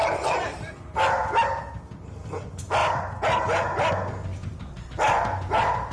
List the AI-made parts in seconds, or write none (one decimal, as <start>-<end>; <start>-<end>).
0.0-1.0; 4.3-4.8